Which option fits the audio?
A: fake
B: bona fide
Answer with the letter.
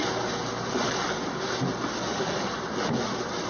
B